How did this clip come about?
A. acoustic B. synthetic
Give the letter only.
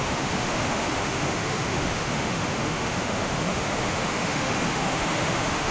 B